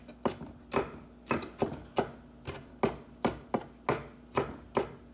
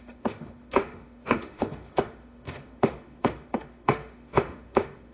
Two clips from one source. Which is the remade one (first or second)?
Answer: second